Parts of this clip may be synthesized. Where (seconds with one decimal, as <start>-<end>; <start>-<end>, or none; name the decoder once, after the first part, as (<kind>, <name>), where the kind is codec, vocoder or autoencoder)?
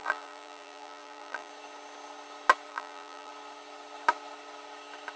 0.0-1.5 (vocoder, BigVGAN v2); 2.7-3.3